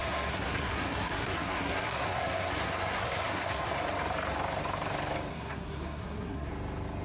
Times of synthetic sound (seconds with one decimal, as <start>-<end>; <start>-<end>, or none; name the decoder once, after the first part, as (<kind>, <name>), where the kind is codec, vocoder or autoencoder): 0.0-3.7 (codec, SNAC); 5.3-6.5